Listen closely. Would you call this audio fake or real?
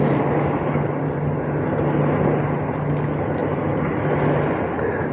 real